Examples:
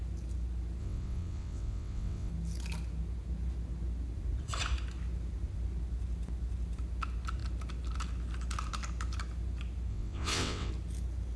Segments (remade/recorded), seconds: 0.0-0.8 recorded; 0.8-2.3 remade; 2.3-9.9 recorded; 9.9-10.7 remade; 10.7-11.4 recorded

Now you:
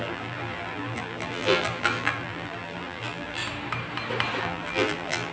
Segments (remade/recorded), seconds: 0.0-3.4 remade; 3.4-4.4 recorded; 4.4-5.3 remade

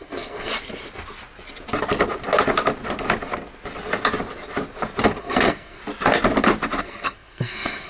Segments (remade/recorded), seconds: 0.0-0.5 remade; 0.5-5.2 recorded; 5.2-5.8 remade; 5.8-6.8 recorded; 6.8-7.9 remade

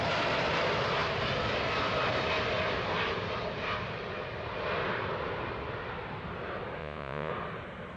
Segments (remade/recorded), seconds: 0.0-6.8 recorded; 6.8-7.3 remade; 7.3-8.0 recorded

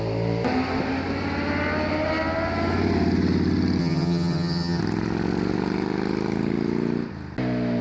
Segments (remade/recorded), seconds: 0.0-3.8 recorded; 3.8-4.8 remade; 4.8-7.8 recorded

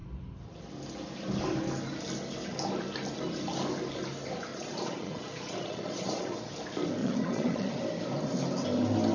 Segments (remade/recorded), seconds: 0.0-4.5 recorded; 4.5-6.5 remade; 6.5-7.0 recorded; 7.0-7.8 remade; 7.8-9.1 recorded

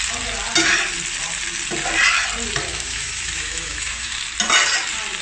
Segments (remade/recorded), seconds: 0.0-2.7 recorded; 2.7-4.1 remade; 4.1-5.2 recorded